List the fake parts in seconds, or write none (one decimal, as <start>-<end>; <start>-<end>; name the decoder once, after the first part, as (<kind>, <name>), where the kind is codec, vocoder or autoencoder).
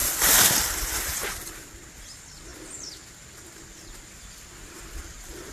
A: none